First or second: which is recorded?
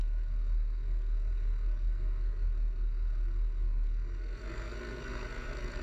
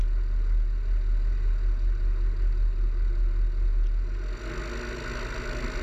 second